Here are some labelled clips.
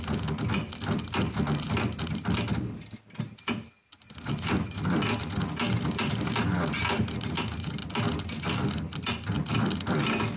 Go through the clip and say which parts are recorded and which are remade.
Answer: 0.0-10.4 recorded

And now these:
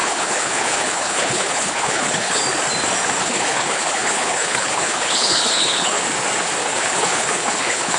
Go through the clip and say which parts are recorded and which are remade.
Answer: 0.0-2.4 remade; 2.4-3.2 recorded; 3.2-6.0 remade; 6.0-6.6 recorded; 6.6-8.0 remade

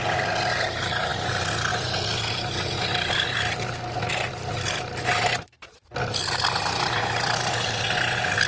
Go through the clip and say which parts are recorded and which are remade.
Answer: 0.0-8.5 recorded

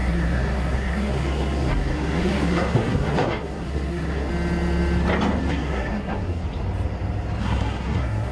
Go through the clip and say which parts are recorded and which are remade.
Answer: 0.0-4.3 remade; 4.3-5.5 recorded; 5.5-6.4 remade; 6.4-7.4 recorded; 7.4-8.3 remade

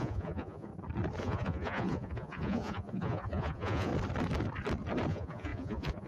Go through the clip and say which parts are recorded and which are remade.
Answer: 0.0-0.7 remade; 0.7-1.2 recorded; 1.2-3.9 remade; 3.9-5.1 recorded; 5.1-6.1 remade

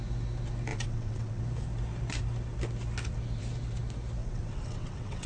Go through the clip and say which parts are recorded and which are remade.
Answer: 0.0-0.7 recorded; 0.7-1.4 remade; 1.4-4.2 recorded; 4.2-5.3 remade